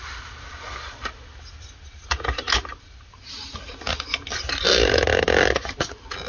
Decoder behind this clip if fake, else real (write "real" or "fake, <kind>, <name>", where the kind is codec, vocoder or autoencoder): real